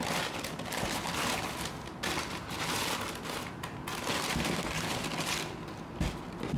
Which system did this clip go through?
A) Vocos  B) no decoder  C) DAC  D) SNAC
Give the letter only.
B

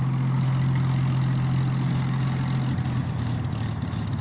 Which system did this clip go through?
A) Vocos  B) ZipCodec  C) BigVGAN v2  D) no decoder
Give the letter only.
D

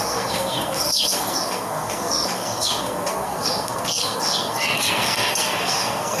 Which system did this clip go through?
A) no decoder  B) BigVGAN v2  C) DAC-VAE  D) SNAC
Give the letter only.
D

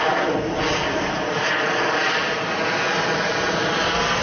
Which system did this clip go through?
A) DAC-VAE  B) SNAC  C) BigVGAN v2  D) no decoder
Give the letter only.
D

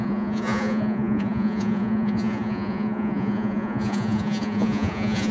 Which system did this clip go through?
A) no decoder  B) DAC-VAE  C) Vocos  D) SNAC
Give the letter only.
C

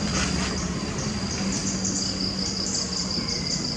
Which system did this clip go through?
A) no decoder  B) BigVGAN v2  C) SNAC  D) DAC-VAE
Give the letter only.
B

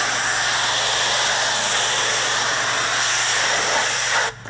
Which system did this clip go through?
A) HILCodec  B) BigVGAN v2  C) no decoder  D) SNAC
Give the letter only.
C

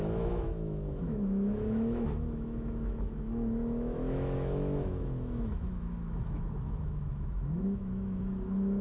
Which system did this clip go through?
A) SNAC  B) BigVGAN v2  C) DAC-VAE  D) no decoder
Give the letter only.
C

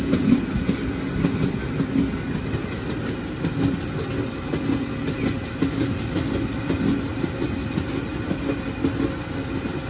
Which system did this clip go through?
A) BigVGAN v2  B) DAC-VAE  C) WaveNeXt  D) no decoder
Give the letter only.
D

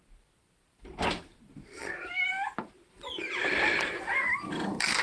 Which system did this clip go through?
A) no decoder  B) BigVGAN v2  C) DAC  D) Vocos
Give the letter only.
A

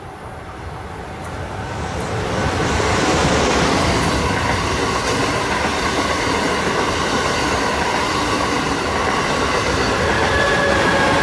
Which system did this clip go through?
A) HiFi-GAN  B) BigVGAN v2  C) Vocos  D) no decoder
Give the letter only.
D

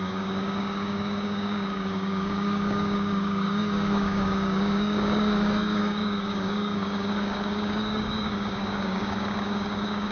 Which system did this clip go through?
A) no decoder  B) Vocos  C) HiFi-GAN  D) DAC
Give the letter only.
D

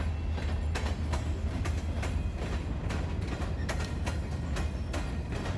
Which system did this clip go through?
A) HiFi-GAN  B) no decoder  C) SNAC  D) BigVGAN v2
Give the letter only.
B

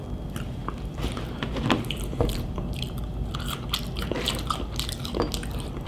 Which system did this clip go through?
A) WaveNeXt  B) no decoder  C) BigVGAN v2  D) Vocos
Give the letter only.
B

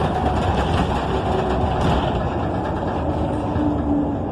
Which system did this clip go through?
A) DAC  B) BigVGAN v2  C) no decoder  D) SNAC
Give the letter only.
C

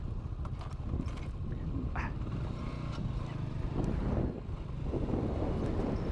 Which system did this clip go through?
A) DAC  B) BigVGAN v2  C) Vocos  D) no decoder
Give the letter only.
D